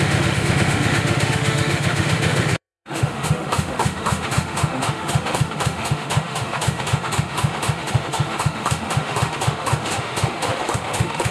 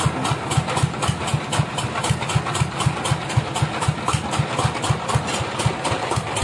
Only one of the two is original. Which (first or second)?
second